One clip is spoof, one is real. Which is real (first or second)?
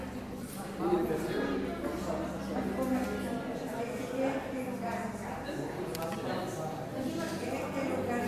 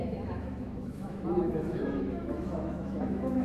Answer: first